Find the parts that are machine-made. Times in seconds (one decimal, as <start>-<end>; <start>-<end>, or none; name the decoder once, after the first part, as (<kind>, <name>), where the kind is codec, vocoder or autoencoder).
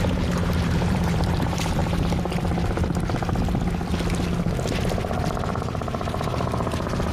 0.0-1.8 (vocoder, BigVGAN v2); 5.5-7.1